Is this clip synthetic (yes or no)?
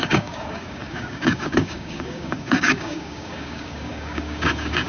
yes